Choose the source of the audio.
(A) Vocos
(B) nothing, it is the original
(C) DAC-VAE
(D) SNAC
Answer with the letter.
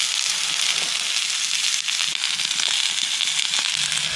B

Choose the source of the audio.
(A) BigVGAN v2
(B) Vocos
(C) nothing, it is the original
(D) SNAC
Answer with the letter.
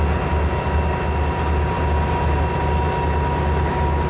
C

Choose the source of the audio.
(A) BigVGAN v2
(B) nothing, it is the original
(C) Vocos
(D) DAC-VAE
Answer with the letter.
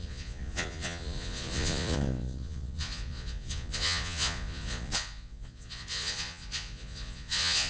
C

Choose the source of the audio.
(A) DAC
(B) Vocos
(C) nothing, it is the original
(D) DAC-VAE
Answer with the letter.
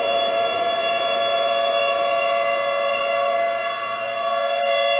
B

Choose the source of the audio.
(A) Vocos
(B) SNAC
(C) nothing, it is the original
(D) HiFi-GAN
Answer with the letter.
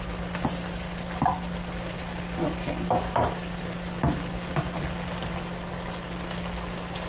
C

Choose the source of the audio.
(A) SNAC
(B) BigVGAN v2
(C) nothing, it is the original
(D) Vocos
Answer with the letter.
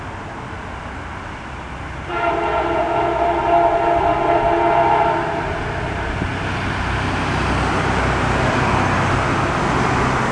C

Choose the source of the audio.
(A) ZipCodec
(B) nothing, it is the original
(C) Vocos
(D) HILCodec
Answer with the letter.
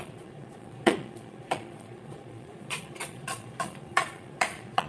C